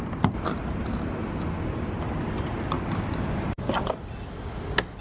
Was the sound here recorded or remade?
recorded